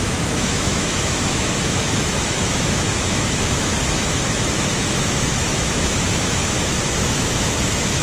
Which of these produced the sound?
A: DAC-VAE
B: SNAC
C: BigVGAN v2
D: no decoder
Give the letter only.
A